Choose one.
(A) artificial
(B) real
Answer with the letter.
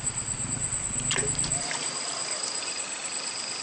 A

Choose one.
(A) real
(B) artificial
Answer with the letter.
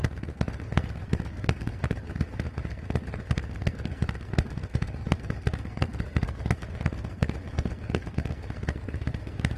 B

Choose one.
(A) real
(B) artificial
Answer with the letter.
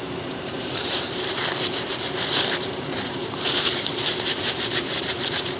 B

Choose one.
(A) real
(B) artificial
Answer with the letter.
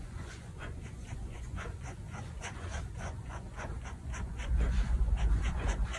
B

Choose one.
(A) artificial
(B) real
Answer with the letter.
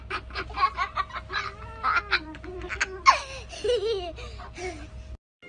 B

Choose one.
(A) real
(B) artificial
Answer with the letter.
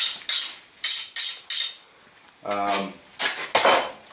A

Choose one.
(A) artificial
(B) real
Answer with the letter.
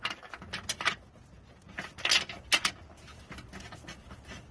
B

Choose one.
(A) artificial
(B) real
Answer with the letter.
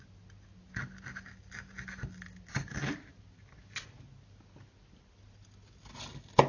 B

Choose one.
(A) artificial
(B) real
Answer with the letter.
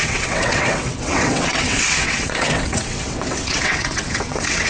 A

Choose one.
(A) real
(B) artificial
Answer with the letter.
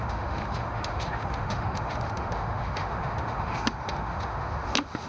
B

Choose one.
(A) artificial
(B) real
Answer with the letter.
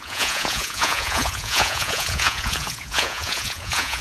A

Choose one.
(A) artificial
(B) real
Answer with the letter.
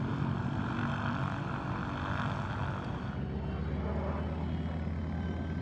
B